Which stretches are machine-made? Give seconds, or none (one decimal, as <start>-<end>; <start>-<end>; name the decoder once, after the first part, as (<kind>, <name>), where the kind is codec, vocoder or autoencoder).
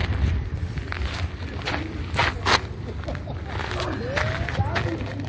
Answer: none